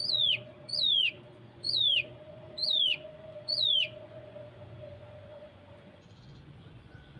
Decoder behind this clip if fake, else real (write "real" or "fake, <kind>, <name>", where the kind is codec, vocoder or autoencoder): fake, vocoder, Vocos